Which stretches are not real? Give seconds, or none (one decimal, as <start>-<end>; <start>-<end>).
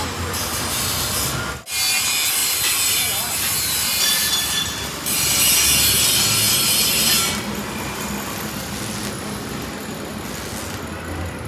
none